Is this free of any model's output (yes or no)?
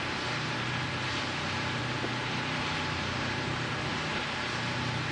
no